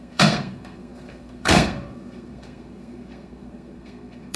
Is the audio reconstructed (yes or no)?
yes